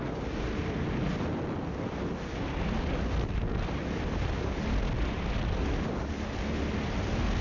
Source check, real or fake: real